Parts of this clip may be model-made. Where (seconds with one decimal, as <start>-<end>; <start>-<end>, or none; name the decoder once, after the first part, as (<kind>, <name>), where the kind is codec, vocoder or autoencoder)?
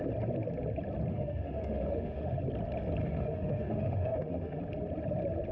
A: 1.1-2.4 (autoencoder, DAC-VAE); 3.0-4.6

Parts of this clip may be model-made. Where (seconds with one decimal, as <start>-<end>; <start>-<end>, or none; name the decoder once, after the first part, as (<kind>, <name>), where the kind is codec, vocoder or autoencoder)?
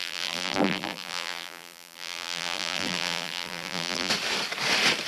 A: 0.0-4.1 (vocoder, BigVGAN v2)